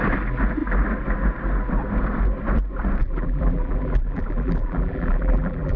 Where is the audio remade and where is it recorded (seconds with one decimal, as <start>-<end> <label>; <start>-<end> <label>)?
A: 0.0-3.0 recorded; 3.0-5.8 remade